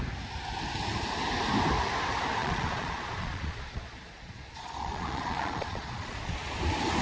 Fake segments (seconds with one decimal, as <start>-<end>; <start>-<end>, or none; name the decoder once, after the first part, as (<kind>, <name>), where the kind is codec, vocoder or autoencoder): 2.4-6.6 (vocoder, Vocos)